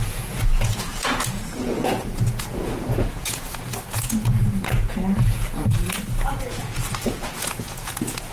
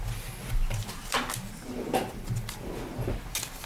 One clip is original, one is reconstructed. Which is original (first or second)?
second